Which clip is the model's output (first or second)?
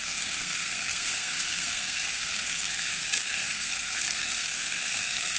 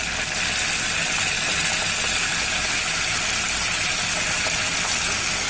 first